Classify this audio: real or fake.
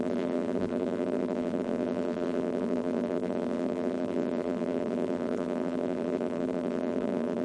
fake